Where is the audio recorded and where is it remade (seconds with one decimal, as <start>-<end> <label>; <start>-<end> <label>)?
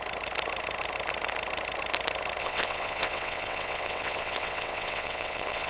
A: 0.0-2.4 recorded; 2.4-5.7 remade